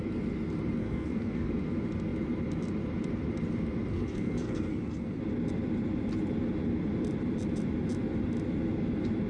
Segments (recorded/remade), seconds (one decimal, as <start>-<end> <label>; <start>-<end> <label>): 0.0-0.8 recorded; 0.8-1.5 remade; 1.5-3.9 recorded; 3.9-5.2 remade; 5.2-9.3 recorded